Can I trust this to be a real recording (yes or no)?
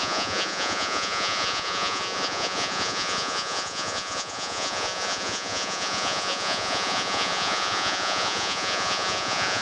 no